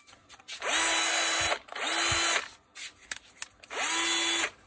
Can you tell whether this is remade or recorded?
recorded